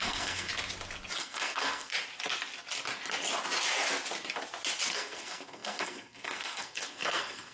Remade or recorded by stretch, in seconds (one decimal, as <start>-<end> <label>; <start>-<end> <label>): 0.0-0.5 remade; 0.5-1.2 recorded; 1.2-1.9 remade; 1.9-4.9 recorded; 4.9-7.5 remade